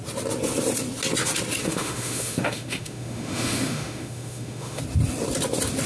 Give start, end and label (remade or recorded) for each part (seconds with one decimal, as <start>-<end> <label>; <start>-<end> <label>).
0.0-1.6 recorded; 1.6-4.8 remade; 4.8-5.9 recorded

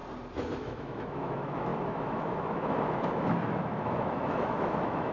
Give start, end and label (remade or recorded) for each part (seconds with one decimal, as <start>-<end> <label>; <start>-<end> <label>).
0.0-0.6 recorded; 0.6-5.1 remade